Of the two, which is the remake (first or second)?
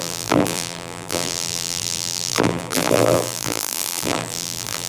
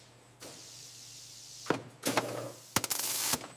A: first